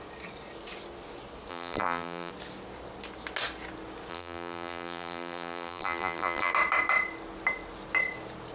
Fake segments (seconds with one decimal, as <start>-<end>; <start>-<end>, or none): 1.5-2.3; 4.1-6.5